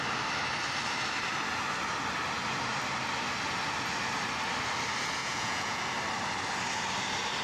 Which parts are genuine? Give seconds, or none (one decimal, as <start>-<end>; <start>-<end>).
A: 0.0-5.2; 5.8-7.4